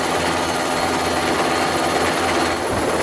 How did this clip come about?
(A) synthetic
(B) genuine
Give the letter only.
B